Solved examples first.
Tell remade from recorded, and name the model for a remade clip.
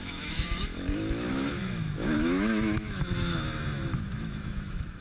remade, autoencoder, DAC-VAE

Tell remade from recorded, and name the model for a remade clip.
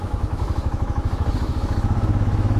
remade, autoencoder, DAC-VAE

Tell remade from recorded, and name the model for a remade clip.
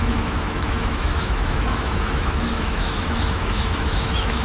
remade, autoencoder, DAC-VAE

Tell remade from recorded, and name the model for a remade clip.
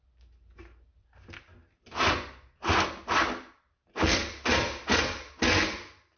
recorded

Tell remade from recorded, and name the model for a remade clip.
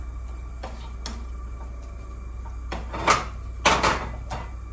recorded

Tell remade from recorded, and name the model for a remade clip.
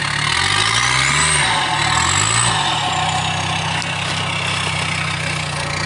recorded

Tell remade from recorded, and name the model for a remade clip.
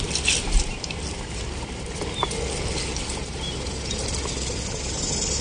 recorded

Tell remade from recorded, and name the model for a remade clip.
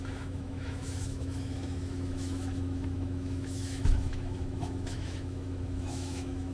remade, autoencoder, DAC-VAE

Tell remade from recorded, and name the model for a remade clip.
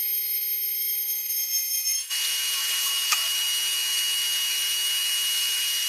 remade, autoencoder, DAC-VAE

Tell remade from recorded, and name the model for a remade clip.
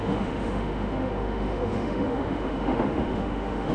remade, autoencoder, DAC-VAE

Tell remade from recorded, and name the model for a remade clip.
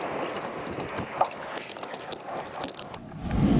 recorded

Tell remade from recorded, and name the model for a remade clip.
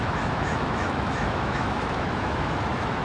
remade, autoencoder, DAC-VAE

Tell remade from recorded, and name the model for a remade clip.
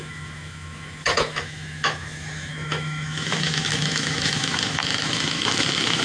remade, autoencoder, DAC-VAE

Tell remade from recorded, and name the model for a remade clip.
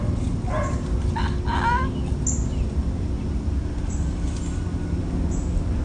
recorded